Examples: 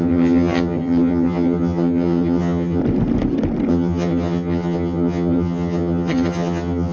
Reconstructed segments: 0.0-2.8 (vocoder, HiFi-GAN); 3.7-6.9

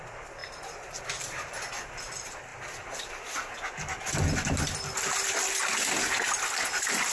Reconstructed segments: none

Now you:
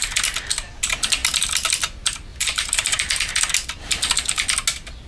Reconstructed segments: 2.3-3.3 (vocoder, BigVGAN v2)

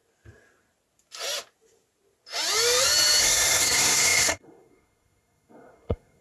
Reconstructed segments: 3.2-6.2 (codec, SNAC)

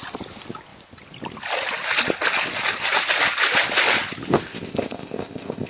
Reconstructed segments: 4.3-5.7 (codec, ZipCodec)